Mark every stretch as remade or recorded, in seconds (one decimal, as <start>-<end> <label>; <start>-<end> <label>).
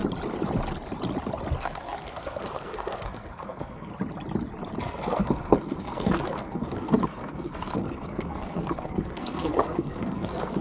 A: 0.0-1.6 recorded; 1.6-3.9 remade; 3.9-4.8 recorded; 4.8-10.6 remade